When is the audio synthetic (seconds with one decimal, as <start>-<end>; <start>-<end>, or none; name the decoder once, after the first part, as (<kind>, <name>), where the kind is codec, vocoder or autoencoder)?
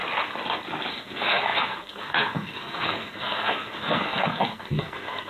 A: 0.9-5.3 (codec, SNAC)